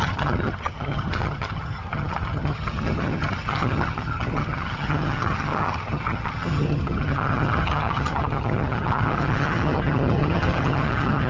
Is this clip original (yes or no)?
no